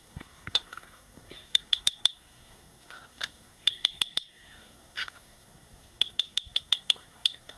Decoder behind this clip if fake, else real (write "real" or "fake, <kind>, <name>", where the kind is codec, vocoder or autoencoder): fake, codec, SNAC